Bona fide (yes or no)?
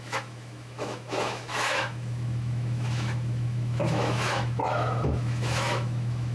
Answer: no